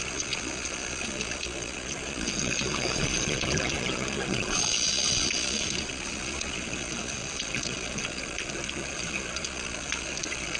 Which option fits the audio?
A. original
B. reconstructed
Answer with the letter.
B